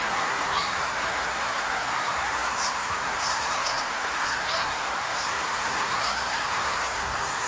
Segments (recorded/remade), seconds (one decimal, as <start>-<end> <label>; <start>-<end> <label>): 0.0-7.5 remade

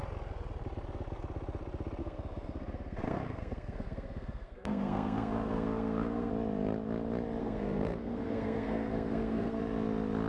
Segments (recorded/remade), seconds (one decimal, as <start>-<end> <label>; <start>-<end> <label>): 0.0-2.0 recorded; 2.0-6.3 remade; 6.3-7.4 recorded; 7.4-9.6 remade; 9.6-10.3 recorded